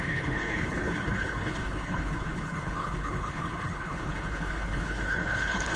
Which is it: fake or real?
fake